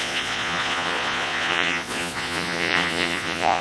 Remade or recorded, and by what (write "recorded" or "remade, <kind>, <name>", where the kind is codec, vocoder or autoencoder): remade, vocoder, Vocos